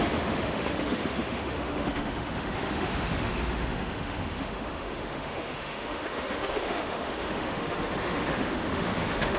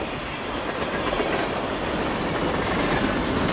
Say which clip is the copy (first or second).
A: first